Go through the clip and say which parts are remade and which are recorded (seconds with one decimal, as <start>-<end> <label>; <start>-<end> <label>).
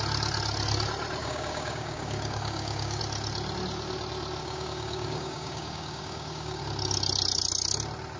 0.0-1.2 recorded; 1.2-3.0 remade; 3.0-4.4 recorded; 4.4-6.6 remade; 6.6-8.2 recorded